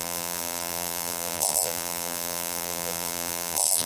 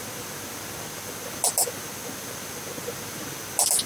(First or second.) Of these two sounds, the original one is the second